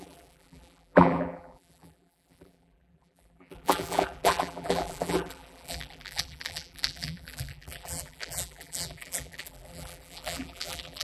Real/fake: fake